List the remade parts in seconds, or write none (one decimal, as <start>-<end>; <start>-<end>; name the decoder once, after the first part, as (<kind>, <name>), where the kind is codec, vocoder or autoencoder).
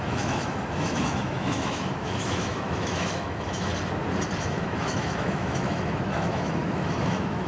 0.0-3.7 (autoencoder, DAC-VAE); 4.4-7.5